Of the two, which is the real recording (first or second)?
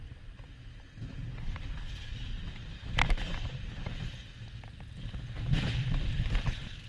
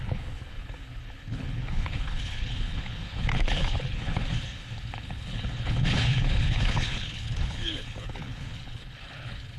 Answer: first